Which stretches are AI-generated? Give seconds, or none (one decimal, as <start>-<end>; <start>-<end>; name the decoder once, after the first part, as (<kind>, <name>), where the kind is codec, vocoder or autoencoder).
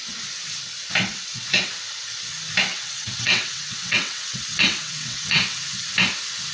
1.1-1.7 (vocoder, WaveNeXt); 2.7-5.6